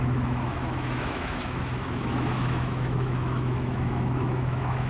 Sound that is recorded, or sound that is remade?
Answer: remade